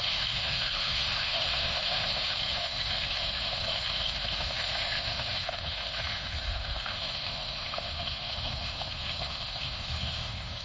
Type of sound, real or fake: fake